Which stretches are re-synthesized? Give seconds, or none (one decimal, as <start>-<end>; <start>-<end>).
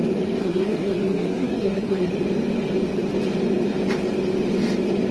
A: 0.4-2.1